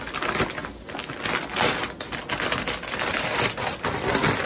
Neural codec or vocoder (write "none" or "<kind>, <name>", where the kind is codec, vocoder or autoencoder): none